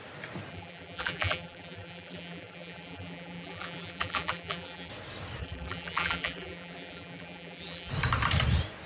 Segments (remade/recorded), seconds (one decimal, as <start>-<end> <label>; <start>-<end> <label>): 0.0-0.5 recorded; 0.5-4.9 remade; 4.9-5.4 recorded; 5.4-7.9 remade; 7.9-8.9 recorded